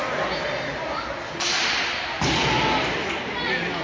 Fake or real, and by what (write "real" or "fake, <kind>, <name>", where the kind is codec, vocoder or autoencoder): real